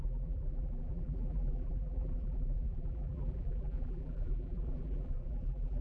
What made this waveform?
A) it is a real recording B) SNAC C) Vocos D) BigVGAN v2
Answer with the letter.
D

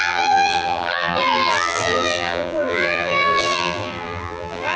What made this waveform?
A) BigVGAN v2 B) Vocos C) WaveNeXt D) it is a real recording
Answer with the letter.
A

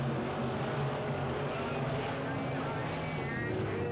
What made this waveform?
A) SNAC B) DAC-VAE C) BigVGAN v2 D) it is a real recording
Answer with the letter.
D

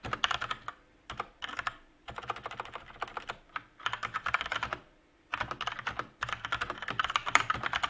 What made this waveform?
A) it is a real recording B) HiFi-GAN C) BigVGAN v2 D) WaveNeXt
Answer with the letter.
C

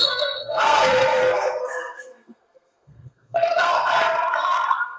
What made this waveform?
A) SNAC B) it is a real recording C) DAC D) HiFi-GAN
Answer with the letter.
A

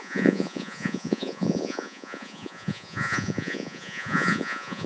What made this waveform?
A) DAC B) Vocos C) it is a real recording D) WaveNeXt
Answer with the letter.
B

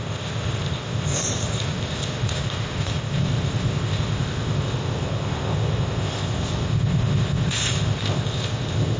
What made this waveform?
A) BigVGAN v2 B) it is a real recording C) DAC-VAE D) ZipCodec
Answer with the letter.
D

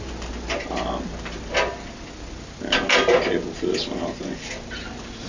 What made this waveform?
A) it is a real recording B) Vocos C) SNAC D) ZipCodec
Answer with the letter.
A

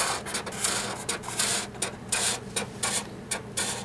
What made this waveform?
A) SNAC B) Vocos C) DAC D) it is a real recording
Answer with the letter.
D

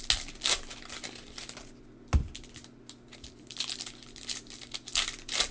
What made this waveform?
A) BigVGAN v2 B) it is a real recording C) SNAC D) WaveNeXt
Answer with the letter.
B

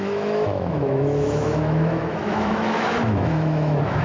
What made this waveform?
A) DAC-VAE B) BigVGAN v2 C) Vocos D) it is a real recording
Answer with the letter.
A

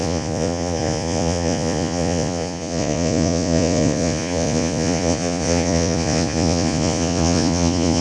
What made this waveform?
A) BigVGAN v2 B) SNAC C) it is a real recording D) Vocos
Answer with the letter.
D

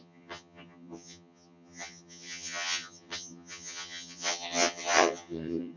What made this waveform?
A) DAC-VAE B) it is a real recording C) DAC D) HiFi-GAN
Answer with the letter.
D